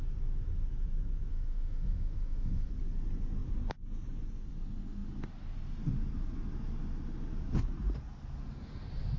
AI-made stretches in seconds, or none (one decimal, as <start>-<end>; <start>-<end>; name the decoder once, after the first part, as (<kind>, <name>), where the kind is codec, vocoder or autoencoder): 1.3-2.7 (autoencoder, DAC-VAE)